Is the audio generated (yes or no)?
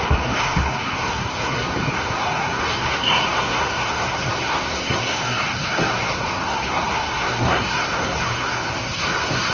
yes